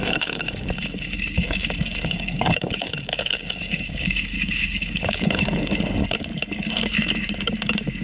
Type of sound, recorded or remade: remade